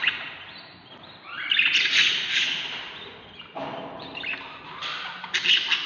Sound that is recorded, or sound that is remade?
recorded